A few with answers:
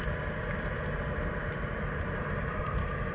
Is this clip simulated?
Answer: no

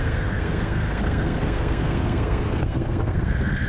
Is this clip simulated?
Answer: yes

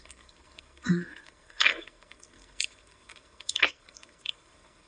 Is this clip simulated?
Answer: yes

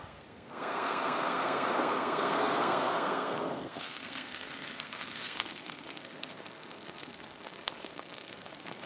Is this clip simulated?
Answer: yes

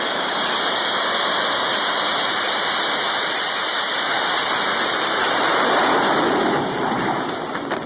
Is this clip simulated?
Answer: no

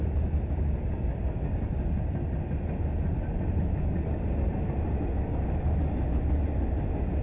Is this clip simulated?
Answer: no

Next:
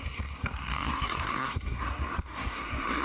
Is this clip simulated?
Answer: yes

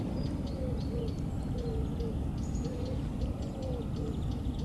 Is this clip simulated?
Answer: no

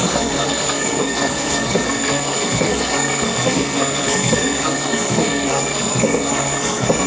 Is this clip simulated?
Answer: yes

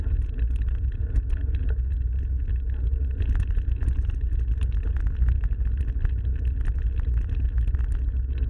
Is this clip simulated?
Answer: no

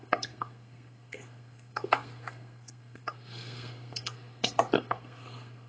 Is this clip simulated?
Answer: yes